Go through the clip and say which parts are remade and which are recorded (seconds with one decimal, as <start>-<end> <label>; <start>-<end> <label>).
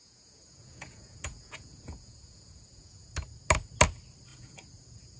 0.0-3.1 remade; 3.1-4.3 recorded; 4.3-5.2 remade